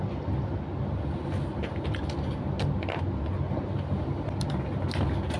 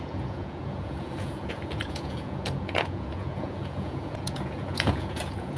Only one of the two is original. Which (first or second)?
first